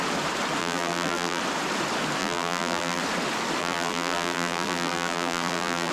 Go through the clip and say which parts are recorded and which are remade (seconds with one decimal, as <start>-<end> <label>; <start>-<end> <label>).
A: 0.0-0.6 recorded; 0.6-1.4 remade; 1.4-2.2 recorded; 2.2-3.0 remade; 3.0-3.6 recorded; 3.6-5.9 remade